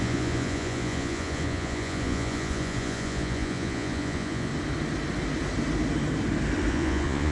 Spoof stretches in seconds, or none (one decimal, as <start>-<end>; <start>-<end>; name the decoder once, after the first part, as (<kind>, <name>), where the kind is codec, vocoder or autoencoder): 0.0-4.5 (vocoder, Vocos); 6.7-7.3